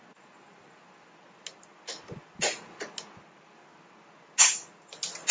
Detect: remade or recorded recorded